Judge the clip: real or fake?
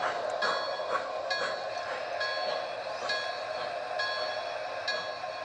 real